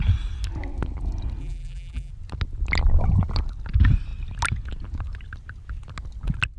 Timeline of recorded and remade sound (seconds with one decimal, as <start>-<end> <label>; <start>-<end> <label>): 0.0-1.4 recorded; 1.4-2.1 remade; 2.1-6.6 recorded